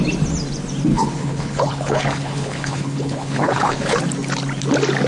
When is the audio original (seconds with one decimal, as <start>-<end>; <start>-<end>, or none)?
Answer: 0.0-0.9; 4.0-5.1